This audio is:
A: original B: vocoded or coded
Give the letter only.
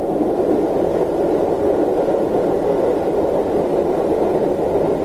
A